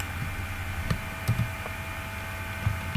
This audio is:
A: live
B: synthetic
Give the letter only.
A